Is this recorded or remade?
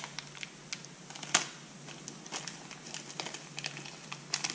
recorded